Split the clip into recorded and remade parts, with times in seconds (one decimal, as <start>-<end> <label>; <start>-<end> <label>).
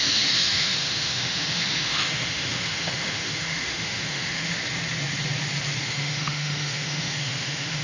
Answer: 0.0-4.5 remade; 4.5-5.8 recorded; 5.8-7.8 remade